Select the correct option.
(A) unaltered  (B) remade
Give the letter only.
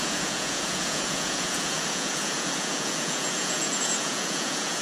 B